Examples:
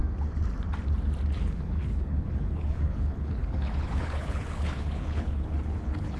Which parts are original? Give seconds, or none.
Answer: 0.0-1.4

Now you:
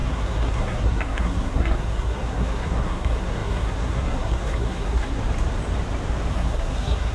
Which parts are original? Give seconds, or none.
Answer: 5.2-6.3

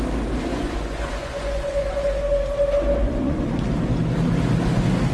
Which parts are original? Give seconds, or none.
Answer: 0.0-0.5; 2.2-3.0; 3.5-5.1

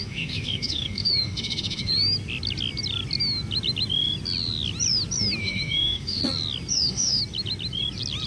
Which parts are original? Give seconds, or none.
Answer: 1.9-5.4; 6.2-6.7; 7.2-8.3

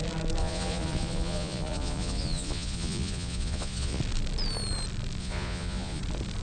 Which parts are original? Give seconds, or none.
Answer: 0.0-0.4; 4.0-5.2; 6.0-6.4

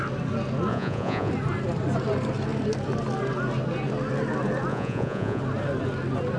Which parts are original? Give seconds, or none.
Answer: 0.0-0.7; 1.3-4.7; 5.4-6.4